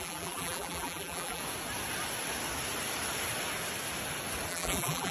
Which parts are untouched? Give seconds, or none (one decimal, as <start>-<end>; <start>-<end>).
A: 1.4-4.5